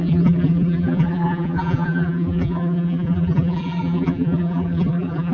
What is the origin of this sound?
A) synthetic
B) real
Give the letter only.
A